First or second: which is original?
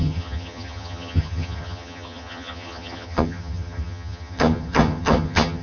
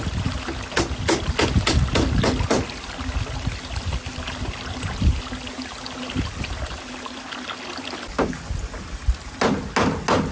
second